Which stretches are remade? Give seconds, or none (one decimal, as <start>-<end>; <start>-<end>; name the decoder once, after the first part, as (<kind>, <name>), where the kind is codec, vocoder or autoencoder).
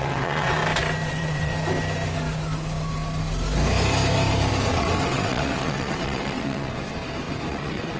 0.0-0.6 (vocoder, WaveNeXt); 1.1-1.5; 4.7-6.9; 7.5-8.0